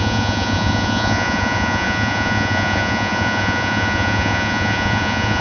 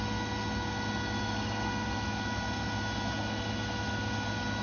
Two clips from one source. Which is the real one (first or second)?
second